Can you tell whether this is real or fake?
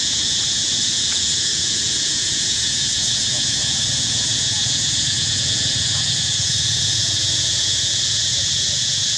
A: fake